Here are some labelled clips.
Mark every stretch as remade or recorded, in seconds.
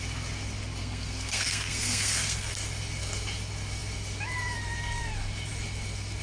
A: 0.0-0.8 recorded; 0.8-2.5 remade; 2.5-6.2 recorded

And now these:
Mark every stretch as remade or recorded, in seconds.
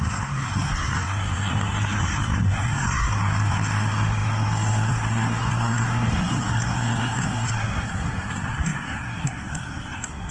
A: 0.0-10.3 remade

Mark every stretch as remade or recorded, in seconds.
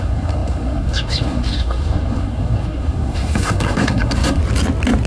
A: 0.0-4.4 remade; 4.4-5.1 recorded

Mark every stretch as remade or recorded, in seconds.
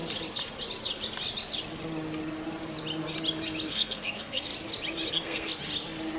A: 0.0-3.7 recorded; 3.7-4.5 remade; 4.5-5.1 recorded; 5.1-5.5 remade; 5.5-6.2 recorded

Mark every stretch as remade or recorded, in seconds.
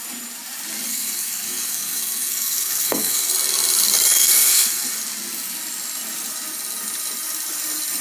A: 0.0-0.9 recorded; 0.9-3.3 remade; 3.3-4.2 recorded; 4.2-4.9 remade; 4.9-8.0 recorded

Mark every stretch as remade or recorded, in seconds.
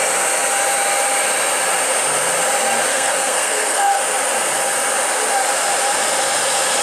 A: 0.0-2.9 recorded; 2.9-4.0 remade; 4.0-6.8 recorded